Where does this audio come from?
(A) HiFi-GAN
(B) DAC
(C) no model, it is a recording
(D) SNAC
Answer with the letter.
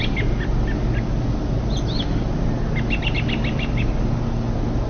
C